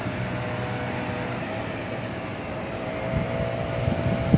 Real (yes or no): yes